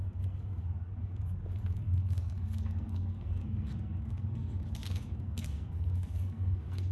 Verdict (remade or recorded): remade